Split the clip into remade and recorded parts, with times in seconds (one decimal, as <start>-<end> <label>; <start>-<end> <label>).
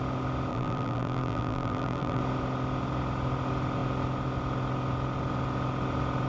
0.0-0.5 recorded; 0.5-2.2 remade; 2.2-6.3 recorded